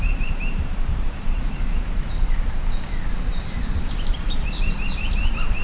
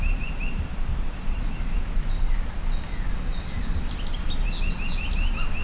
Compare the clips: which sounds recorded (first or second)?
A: second